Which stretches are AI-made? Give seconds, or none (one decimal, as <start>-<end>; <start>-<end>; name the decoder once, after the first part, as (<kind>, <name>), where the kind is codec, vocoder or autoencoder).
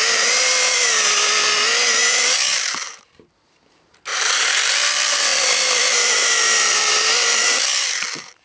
2.0-3.1 (vocoder, BigVGAN v2); 4.1-4.7; 5.3-8.4